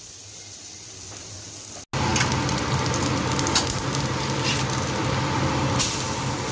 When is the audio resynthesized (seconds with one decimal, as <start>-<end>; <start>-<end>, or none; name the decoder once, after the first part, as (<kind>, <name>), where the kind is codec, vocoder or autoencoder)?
none